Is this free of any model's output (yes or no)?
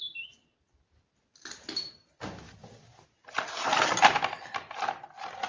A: yes